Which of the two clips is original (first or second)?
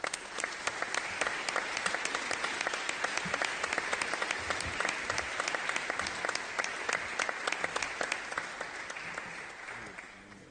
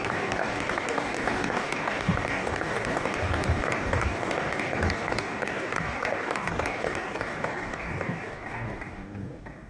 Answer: first